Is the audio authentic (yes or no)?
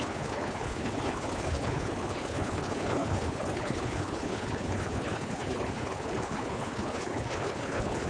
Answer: no